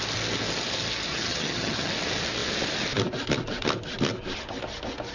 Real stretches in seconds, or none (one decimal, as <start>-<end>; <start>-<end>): 0.0-1.1; 1.9-5.1